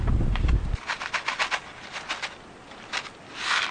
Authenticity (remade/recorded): recorded